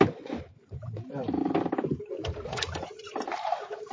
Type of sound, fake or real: fake